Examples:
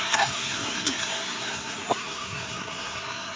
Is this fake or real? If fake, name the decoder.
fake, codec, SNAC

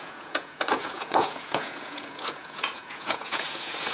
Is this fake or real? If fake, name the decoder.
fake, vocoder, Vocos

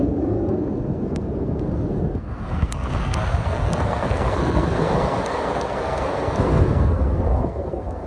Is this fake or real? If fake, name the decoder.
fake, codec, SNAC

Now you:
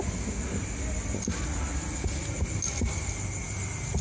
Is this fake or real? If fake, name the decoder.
real